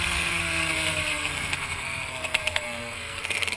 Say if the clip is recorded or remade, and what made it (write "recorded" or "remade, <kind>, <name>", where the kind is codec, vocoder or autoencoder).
remade, codec, SNAC